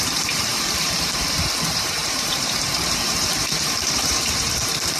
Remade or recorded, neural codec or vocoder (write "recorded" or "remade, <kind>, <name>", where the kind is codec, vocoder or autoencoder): remade, vocoder, BigVGAN v2